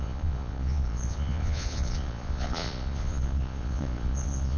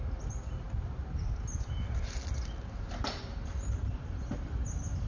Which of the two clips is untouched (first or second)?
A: second